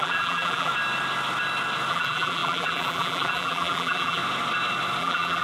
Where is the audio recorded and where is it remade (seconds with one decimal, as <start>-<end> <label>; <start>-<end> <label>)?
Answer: 0.0-0.7 remade; 0.7-1.9 recorded; 1.9-4.2 remade; 4.2-5.0 recorded; 5.0-5.4 remade

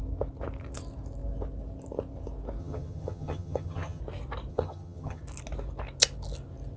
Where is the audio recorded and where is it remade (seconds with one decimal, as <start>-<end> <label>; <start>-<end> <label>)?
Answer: 0.0-2.6 recorded; 2.6-4.0 remade; 4.0-4.5 recorded; 4.5-5.2 remade; 5.2-6.8 recorded

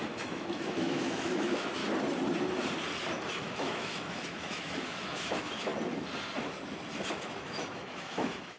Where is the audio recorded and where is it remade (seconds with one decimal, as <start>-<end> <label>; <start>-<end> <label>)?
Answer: 0.0-1.8 remade; 1.8-3.4 recorded; 3.4-5.7 remade; 5.7-7.1 recorded; 7.1-8.6 remade

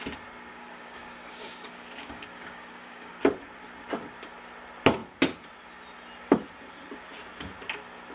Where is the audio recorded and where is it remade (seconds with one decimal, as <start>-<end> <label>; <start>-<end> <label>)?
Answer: 0.0-0.5 recorded; 0.5-3.2 remade; 3.2-8.1 recorded

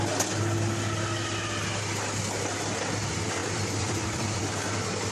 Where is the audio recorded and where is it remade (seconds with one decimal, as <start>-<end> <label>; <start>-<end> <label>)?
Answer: 0.0-3.4 recorded; 3.4-4.4 remade; 4.4-5.1 recorded